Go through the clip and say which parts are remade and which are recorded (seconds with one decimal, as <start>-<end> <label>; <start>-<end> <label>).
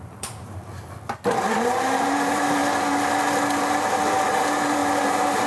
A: 0.0-0.6 remade; 0.6-1.3 recorded; 1.3-2.6 remade; 2.6-4.3 recorded; 4.3-4.8 remade; 4.8-5.5 recorded